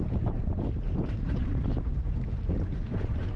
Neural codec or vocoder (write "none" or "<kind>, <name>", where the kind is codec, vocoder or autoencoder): vocoder, BigVGAN v2